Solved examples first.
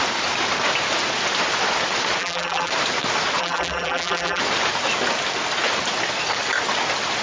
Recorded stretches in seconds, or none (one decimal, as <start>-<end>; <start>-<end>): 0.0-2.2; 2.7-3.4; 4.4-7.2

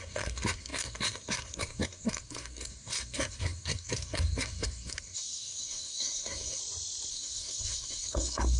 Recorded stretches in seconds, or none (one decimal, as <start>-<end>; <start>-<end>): 6.6-7.1

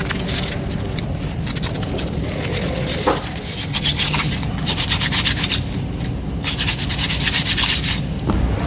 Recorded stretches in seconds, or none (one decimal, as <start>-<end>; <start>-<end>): 0.0-3.7; 4.3-8.7

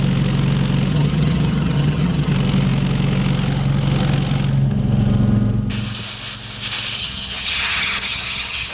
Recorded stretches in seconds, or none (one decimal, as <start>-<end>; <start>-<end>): 0.0-0.9; 2.3-7.0

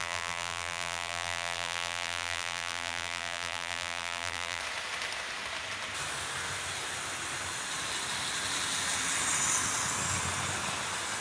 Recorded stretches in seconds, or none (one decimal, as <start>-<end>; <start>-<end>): 4.6-11.2